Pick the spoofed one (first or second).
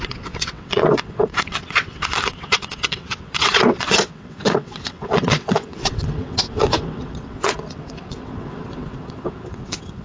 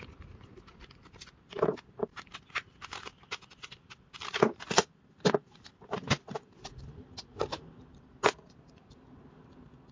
first